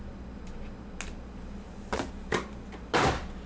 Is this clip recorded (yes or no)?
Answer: yes